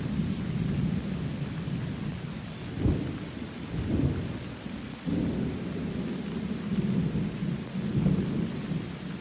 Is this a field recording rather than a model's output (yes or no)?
yes